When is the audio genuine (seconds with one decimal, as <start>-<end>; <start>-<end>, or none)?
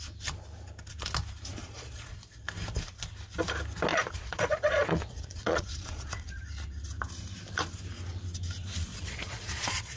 0.0-1.6; 2.4-3.9; 6.4-8.9